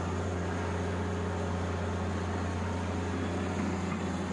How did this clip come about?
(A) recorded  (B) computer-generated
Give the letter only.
A